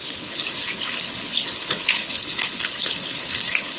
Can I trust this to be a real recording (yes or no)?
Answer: no